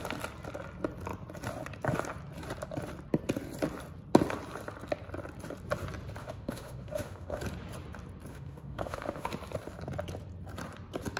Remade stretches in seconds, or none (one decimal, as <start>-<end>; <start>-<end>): 6.2-7.4; 8.3-9.3